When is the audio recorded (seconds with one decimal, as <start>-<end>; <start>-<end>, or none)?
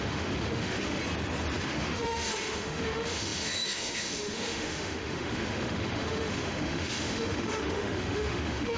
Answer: 1.0-1.6